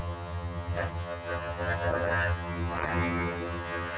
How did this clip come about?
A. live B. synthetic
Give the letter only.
B